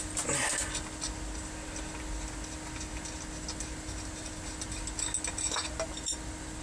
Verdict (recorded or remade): recorded